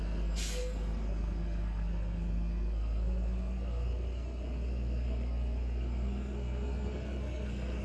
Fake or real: fake